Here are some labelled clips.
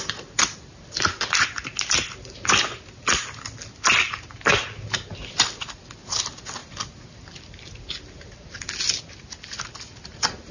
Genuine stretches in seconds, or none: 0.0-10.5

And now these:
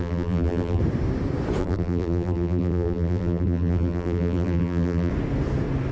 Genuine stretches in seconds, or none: 0.8-1.6; 5.1-5.9

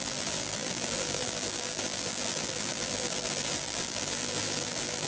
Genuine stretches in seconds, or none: none

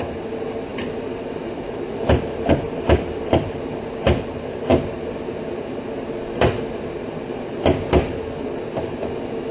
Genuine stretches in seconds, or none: 0.0-0.7; 4.2-9.5

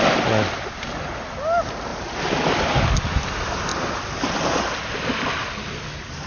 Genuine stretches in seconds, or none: 0.0-6.3